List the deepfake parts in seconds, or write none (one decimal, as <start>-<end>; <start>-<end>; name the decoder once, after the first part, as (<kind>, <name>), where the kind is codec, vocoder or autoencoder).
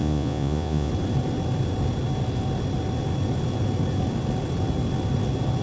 0.0-0.9 (vocoder, Vocos)